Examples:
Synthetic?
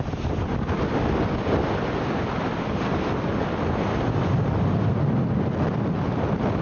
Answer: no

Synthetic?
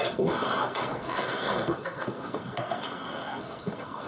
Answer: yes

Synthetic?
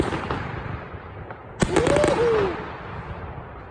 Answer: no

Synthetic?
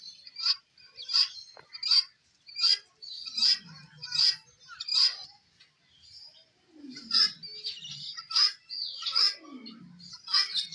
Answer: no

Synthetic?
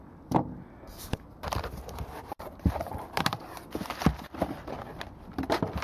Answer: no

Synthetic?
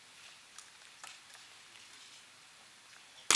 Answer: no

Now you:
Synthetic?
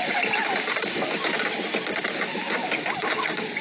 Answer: no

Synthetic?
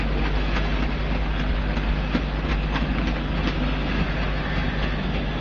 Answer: no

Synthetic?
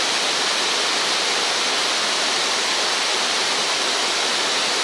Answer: no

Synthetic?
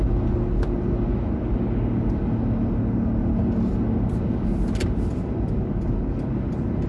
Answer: no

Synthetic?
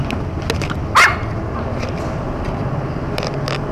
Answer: no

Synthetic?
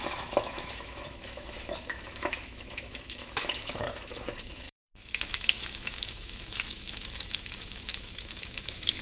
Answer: yes